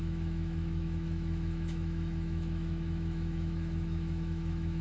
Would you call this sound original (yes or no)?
no